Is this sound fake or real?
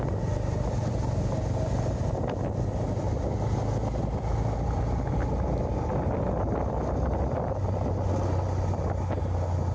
real